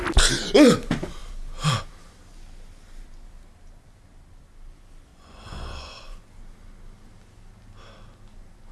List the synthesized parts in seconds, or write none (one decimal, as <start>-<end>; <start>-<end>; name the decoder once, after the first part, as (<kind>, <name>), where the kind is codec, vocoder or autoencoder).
5.1-6.3 (vocoder, Vocos)